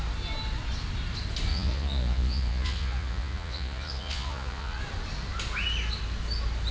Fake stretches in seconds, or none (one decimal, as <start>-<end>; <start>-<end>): 1.5-4.8